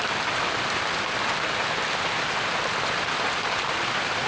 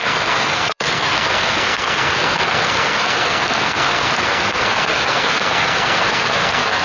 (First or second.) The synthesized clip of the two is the second